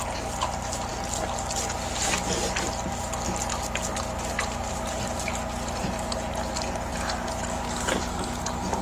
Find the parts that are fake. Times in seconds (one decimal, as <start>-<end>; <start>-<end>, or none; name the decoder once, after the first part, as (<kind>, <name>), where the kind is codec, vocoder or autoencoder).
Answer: none